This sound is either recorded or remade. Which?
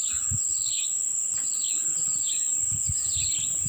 recorded